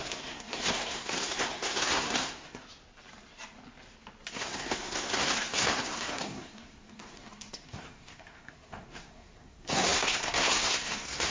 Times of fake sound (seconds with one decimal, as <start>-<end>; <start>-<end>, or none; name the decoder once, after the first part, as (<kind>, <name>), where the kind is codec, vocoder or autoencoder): 0.0-2.6 (codec, SNAC); 4.3-11.3